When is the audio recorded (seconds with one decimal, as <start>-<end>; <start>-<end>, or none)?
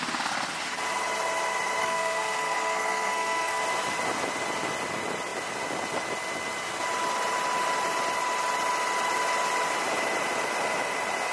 0.0-1.8; 3.6-11.3